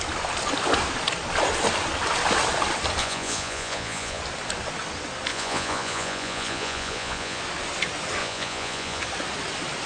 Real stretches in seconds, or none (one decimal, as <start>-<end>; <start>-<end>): 0.0-3.0; 4.2-5.3; 7.4-8.2; 9.0-9.9